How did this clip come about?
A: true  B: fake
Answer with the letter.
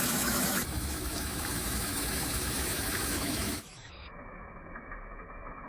B